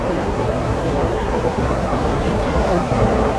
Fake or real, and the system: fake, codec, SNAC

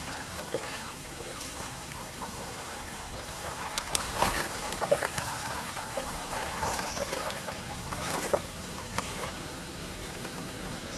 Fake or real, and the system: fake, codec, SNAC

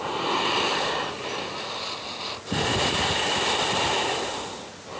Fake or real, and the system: real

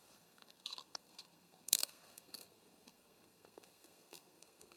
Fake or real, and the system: fake, codec, SNAC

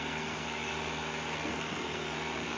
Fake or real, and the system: fake, codec, SNAC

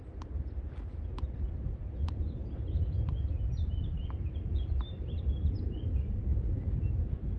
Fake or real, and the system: real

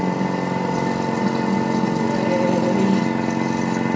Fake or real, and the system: real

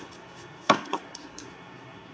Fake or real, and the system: fake, codec, SNAC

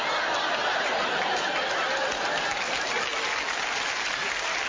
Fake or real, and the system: real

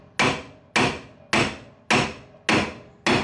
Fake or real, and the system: real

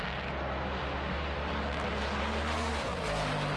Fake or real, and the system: real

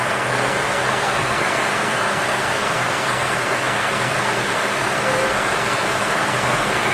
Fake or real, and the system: fake, codec, SNAC